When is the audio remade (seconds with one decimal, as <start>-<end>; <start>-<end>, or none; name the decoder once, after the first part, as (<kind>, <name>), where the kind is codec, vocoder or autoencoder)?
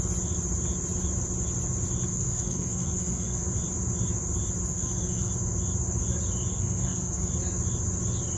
2.1-3.5 (codec, SNAC); 4.7-5.3; 6.5-7.3